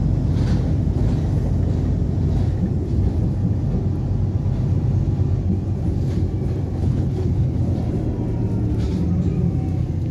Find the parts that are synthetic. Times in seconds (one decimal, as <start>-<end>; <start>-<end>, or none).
6.8-7.7